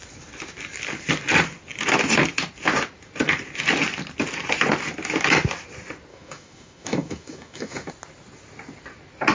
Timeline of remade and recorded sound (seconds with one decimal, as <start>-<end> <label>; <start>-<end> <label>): 0.0-6.1 recorded; 6.1-7.9 remade; 7.9-9.3 recorded